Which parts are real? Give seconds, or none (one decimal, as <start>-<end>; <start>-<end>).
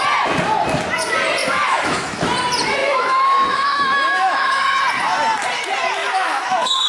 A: 0.0-1.4; 2.2-2.8; 4.8-6.0